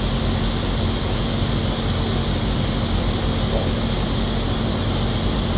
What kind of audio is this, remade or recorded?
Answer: recorded